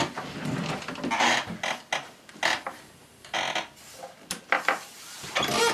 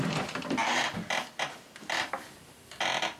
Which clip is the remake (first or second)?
second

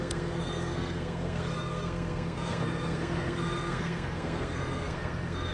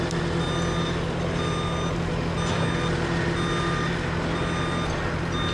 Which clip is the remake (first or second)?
first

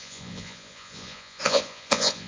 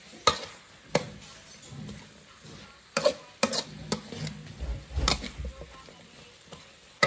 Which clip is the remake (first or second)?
first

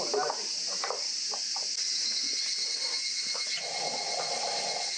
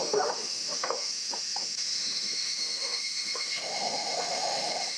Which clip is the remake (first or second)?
second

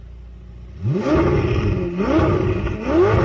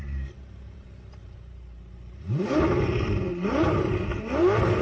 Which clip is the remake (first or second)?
second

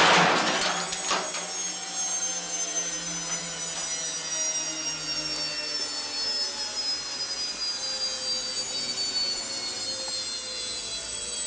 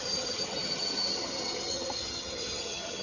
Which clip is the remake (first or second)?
second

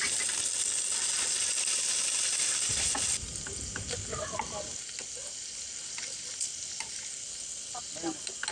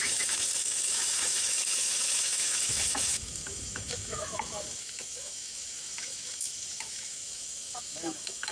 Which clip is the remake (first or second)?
second